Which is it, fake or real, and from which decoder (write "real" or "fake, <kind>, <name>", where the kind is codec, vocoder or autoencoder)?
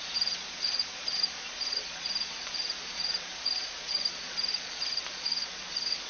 fake, vocoder, Vocos